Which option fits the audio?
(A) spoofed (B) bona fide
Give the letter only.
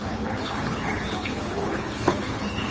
A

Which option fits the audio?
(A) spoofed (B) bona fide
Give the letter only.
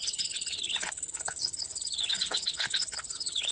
A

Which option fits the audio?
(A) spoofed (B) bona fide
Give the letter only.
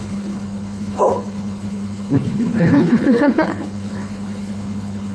A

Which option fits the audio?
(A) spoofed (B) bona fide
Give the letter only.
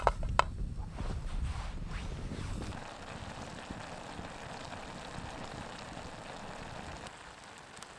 B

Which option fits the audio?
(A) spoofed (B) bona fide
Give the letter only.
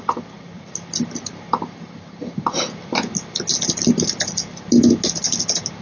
B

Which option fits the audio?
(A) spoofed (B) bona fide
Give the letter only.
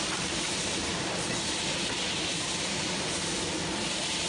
B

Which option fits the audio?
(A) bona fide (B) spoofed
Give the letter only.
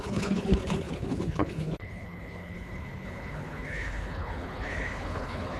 B